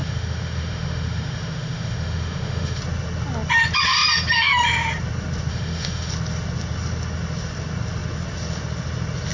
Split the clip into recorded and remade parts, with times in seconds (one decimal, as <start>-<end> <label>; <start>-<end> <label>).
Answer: 0.0-2.8 remade; 2.8-5.5 recorded; 5.5-6.1 remade; 6.1-9.3 recorded